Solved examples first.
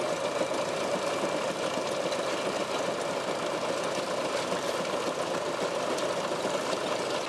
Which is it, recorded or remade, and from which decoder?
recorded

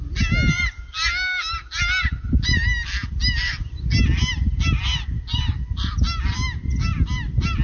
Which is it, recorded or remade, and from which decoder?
recorded